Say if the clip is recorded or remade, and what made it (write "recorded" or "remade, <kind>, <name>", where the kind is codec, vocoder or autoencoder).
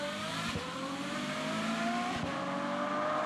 recorded